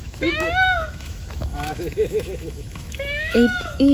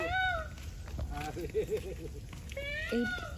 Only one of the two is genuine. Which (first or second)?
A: second